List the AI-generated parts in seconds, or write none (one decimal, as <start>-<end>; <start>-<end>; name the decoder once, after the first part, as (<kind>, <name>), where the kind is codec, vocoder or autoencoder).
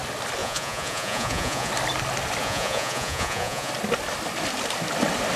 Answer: 0.4-1.7 (vocoder, Vocos); 2.4-3.7